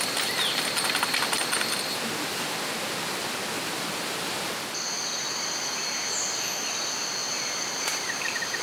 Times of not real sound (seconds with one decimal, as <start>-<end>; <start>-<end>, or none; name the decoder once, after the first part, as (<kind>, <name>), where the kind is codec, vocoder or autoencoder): 7.2-8.6 (vocoder, BigVGAN v2)